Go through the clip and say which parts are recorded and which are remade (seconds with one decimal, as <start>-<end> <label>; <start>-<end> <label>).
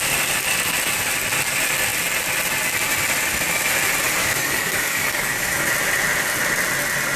0.0-4.2 recorded; 4.2-5.7 remade; 5.7-7.2 recorded